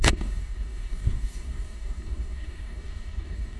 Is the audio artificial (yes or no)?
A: yes